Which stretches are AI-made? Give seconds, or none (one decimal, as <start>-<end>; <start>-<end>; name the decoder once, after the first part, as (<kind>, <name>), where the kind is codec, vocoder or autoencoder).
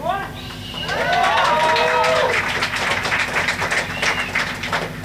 2.2-3.6 (vocoder, BigVGAN v2)